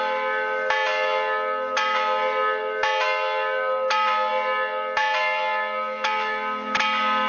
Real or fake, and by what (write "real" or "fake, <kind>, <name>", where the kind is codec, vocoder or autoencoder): real